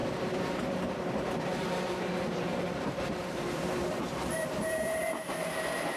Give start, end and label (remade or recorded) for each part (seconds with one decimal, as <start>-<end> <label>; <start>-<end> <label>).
0.0-1.5 recorded; 1.5-2.1 remade; 2.1-2.5 recorded; 2.5-5.3 remade; 5.3-6.0 recorded